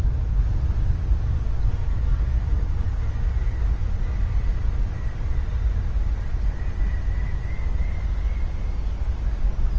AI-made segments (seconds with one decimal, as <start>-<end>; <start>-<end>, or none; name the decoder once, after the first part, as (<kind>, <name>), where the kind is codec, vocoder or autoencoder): 1.8-3.0 (codec, DAC)